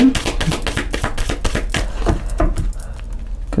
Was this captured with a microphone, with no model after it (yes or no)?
yes